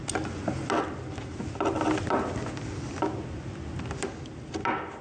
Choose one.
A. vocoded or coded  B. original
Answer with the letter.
B